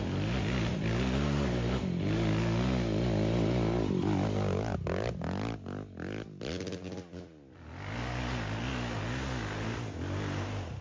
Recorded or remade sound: recorded